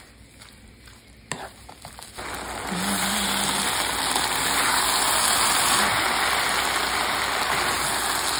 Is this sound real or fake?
real